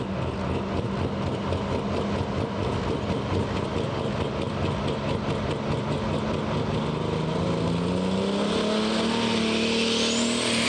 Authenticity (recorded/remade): recorded